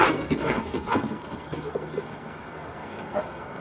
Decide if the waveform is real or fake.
fake